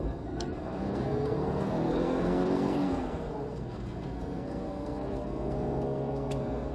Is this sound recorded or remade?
remade